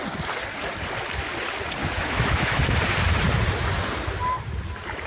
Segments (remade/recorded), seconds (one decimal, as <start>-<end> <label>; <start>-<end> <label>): 0.0-1.8 recorded; 1.8-2.6 remade; 2.6-5.1 recorded